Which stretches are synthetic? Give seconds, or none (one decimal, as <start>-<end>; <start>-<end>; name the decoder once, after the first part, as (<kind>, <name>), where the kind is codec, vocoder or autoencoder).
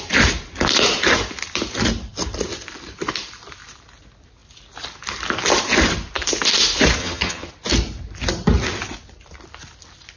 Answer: 7.0-7.5 (vocoder, HiFi-GAN)